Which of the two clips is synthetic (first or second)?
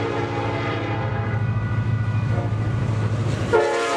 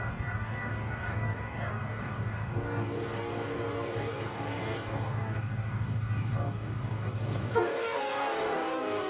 second